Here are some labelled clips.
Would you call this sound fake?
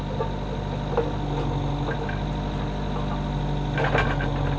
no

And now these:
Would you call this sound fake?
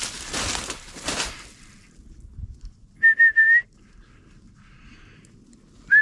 no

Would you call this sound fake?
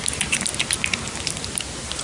no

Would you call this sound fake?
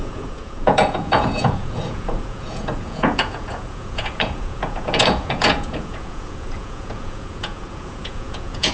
yes